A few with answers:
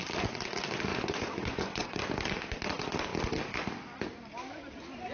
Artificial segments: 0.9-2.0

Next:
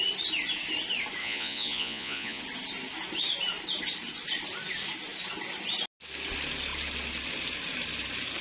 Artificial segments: 1.2-2.4

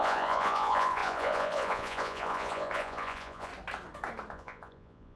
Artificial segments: 0.0-3.5; 4.3-5.2

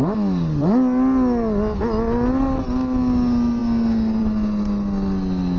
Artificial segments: none